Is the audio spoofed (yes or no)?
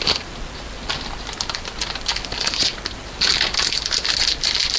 no